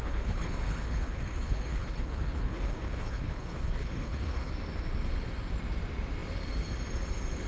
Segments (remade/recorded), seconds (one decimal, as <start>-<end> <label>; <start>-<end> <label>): 0.0-4.5 remade; 4.5-7.5 recorded